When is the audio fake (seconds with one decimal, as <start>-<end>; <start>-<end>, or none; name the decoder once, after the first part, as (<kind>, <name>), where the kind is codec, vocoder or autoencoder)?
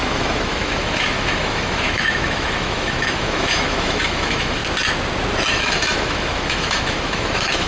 0.0-4.6 (autoencoder, DAC-VAE); 5.4-7.7